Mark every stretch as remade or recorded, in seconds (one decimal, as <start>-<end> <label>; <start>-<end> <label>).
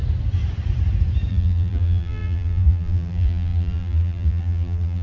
0.0-1.3 recorded; 1.3-5.0 remade